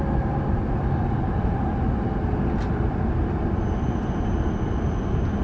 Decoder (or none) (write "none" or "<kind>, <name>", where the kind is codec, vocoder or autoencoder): none